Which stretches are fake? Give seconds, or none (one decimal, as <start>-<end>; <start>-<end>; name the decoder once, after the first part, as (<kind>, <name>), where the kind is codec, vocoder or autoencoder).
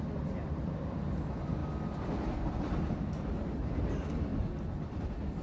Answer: none